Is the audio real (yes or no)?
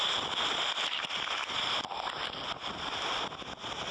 yes